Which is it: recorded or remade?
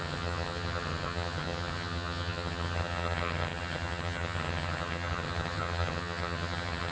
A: remade